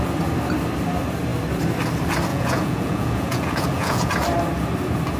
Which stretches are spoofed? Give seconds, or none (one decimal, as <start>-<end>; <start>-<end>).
2.3-4.1